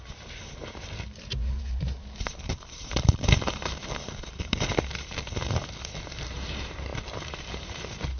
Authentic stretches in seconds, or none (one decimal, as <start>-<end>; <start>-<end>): none